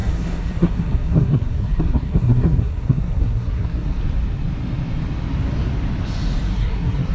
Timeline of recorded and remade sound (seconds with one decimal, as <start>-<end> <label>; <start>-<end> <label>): 0.0-4.0 remade; 4.0-6.5 recorded; 6.5-7.1 remade